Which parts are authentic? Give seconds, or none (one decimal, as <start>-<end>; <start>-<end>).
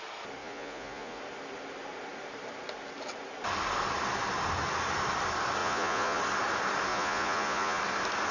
0.0-0.4; 1.2-5.6; 6.2-6.9; 7.8-8.3